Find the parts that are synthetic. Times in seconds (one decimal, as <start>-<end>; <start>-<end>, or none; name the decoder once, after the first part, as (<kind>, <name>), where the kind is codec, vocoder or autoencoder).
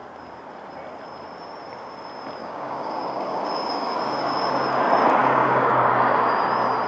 2.4-4.5 (codec, DAC); 5.2-5.9